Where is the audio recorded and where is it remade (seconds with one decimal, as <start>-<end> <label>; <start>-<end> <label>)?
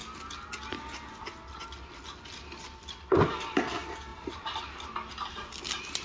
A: 0.0-4.1 recorded; 4.1-4.6 remade; 4.6-6.0 recorded